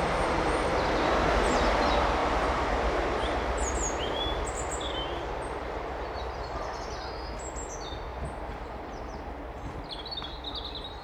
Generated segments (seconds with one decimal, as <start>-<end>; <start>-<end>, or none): 2.2-4.4; 5.2-6.3; 8.1-9.3

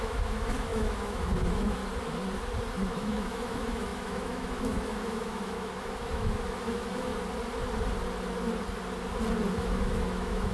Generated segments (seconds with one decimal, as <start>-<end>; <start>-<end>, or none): 0.0-1.8; 2.9-7.1; 9.5-10.5

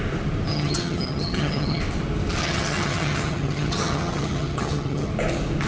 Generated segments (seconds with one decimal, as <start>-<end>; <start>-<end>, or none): 0.5-1.8; 2.4-5.1